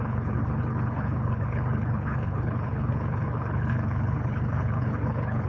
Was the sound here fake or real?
fake